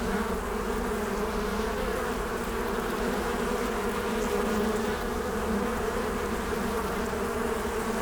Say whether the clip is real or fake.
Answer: real